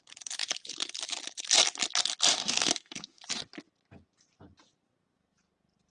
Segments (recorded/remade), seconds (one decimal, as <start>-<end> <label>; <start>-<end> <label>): 0.0-2.3 recorded; 2.3-3.2 remade; 3.2-5.9 recorded